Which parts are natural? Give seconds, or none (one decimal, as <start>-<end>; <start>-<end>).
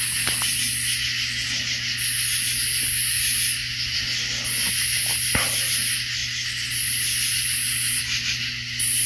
0.0-9.1